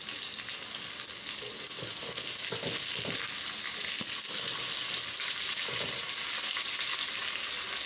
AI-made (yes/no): no